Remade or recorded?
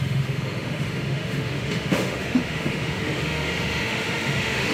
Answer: remade